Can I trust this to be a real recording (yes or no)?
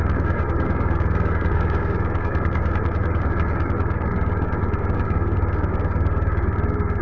no